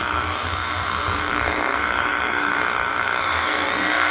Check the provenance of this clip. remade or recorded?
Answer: remade